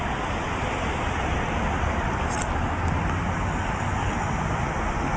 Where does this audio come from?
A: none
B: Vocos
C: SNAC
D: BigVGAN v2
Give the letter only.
A